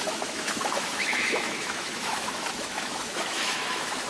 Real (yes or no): no